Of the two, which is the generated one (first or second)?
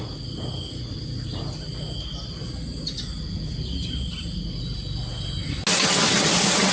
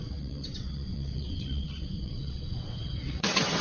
second